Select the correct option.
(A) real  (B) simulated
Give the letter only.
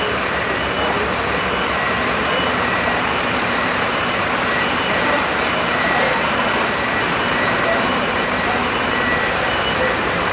B